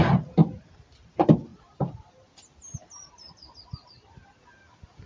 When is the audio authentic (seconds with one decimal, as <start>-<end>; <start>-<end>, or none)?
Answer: 0.0-5.1